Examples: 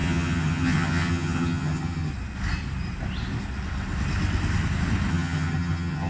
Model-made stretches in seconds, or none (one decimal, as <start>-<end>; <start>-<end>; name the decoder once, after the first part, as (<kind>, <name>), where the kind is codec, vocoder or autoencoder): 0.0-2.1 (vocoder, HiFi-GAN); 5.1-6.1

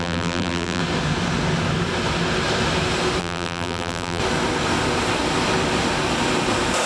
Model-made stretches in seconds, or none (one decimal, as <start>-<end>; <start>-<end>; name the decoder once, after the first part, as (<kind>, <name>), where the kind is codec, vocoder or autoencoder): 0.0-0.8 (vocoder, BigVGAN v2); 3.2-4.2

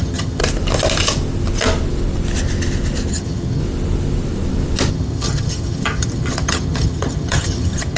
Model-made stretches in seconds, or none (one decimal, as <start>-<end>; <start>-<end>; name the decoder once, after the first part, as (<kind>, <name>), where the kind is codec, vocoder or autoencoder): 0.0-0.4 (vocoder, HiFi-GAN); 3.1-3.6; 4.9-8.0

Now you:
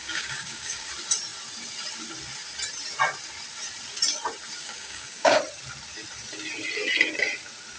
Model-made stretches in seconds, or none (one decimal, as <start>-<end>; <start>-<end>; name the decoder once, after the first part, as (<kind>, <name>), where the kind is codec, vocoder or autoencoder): 0.0-0.9 (codec, DAC); 4.6-5.4